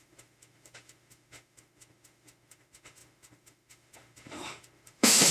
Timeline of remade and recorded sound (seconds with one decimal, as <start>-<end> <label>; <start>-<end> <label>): 0.0-5.3 remade